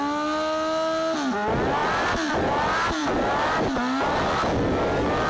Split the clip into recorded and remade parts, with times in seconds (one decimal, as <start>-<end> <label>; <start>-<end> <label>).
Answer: 0.0-5.3 recorded